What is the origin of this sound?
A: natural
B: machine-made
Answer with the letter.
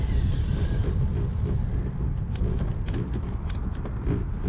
A